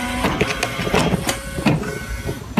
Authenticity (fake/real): real